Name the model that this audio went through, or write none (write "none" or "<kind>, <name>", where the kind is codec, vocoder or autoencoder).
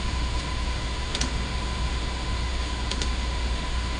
autoencoder, DAC-VAE